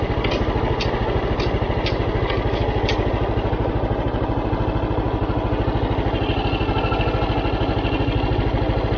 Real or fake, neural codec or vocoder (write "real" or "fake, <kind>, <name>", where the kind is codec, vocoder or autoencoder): real